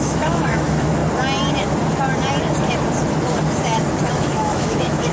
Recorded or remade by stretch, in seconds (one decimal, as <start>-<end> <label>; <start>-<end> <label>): 0.0-1.0 remade; 1.0-4.1 recorded; 4.1-5.1 remade